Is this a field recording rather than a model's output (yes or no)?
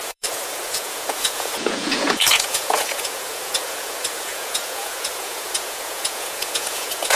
no